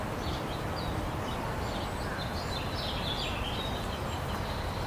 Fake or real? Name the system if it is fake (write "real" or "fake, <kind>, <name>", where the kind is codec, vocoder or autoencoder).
real